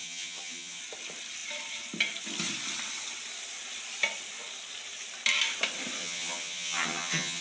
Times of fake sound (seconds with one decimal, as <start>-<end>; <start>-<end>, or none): 0.0-0.8; 6.0-7.4